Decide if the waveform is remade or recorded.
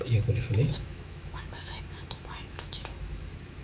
remade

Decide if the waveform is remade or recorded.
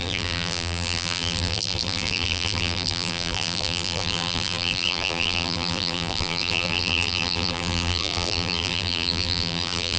remade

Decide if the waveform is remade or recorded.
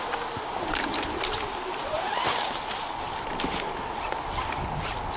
recorded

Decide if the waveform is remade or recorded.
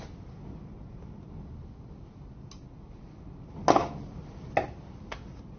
recorded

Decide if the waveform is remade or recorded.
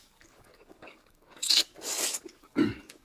remade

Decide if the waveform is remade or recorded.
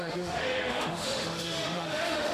remade